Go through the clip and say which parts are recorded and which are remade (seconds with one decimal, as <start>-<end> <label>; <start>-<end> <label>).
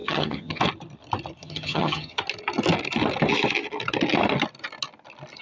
0.0-0.6 remade; 0.6-1.4 recorded; 1.4-2.2 remade; 2.2-5.4 recorded